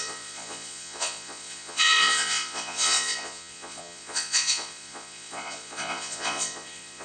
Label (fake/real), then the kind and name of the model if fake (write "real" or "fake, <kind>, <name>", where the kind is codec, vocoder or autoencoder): fake, vocoder, Vocos